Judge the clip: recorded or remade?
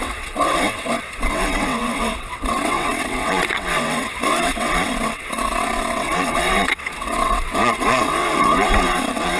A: remade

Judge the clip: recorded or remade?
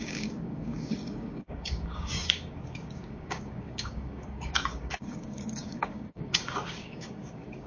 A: remade